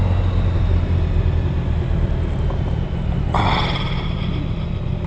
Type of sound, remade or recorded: recorded